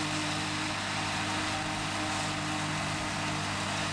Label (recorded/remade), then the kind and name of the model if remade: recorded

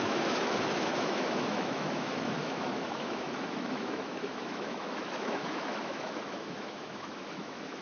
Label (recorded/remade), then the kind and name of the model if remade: remade, autoencoder, DAC-VAE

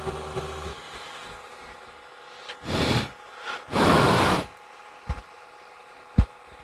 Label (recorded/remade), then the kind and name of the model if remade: recorded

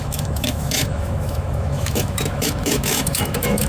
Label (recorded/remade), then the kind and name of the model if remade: remade, autoencoder, DAC-VAE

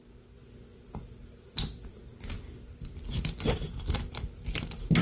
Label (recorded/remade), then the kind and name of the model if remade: recorded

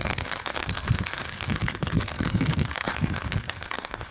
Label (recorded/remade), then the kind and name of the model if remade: remade, codec, SNAC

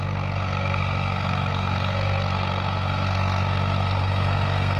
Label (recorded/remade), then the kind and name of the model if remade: remade, codec, SNAC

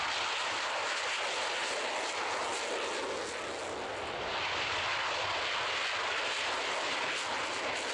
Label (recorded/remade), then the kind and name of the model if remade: recorded